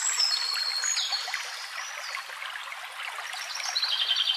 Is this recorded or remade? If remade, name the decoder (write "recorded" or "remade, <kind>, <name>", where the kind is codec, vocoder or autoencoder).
recorded